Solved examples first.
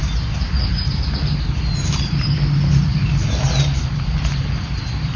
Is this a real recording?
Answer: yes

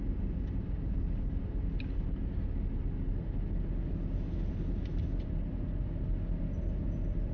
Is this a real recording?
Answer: yes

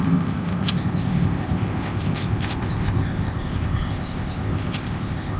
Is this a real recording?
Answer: no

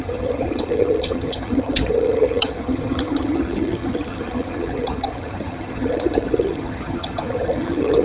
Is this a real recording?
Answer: no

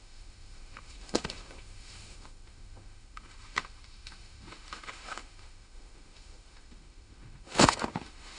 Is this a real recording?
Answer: no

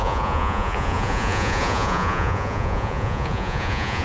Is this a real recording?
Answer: no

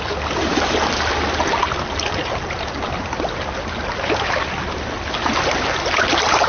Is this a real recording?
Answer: yes